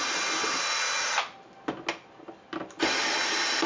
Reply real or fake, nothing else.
real